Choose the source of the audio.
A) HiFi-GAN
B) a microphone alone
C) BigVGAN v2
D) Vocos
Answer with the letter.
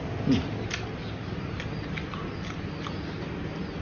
B